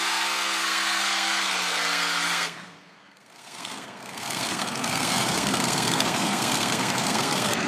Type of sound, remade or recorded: remade